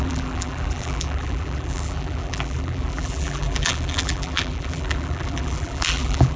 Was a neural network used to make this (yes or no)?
yes